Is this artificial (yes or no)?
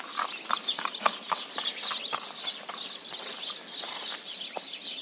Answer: no